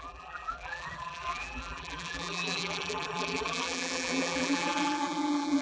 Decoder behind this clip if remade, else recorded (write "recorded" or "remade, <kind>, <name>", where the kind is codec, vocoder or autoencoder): remade, vocoder, BigVGAN v2